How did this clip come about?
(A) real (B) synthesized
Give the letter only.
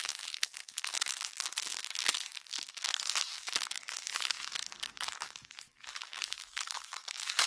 B